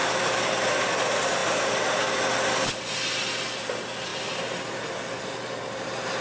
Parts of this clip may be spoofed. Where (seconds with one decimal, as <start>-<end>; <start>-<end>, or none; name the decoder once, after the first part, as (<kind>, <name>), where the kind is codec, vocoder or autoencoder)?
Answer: 0.0-0.9 (vocoder, BigVGAN v2); 4.1-4.6